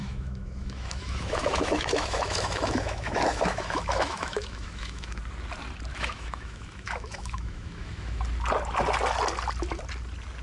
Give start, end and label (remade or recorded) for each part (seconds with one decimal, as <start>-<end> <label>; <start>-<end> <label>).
0.0-5.2 remade; 5.2-5.9 recorded; 5.9-8.2 remade; 8.2-10.4 recorded